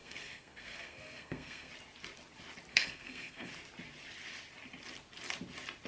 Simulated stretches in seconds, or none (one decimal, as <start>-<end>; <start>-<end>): 0.0-1.7; 2.7-3.5